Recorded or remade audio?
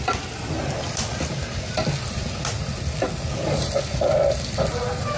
recorded